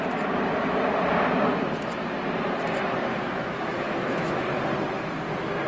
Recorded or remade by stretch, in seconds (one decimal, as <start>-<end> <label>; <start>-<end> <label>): 0.0-3.1 recorded; 3.1-4.4 remade; 4.4-5.7 recorded